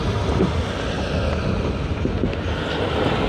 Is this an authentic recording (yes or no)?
yes